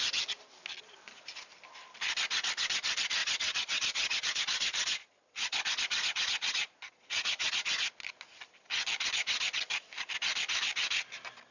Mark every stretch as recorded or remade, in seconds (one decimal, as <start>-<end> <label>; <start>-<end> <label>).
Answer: 0.0-3.2 recorded; 3.2-7.9 remade; 7.9-11.5 recorded